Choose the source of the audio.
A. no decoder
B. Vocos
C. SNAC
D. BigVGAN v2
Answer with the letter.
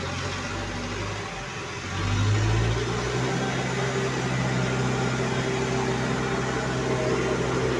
A